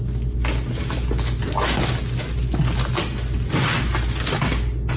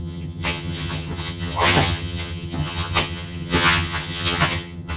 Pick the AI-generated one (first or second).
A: second